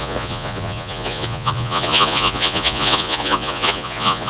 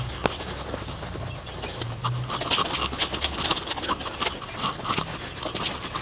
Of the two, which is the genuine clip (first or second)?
second